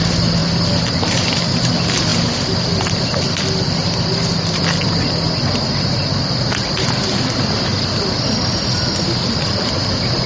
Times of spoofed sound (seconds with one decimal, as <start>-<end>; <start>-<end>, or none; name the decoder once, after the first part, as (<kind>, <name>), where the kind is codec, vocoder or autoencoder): none